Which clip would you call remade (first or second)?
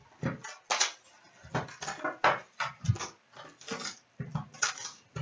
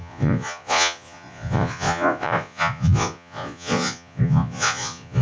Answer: second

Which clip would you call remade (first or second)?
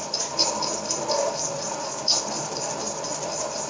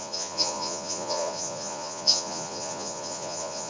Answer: second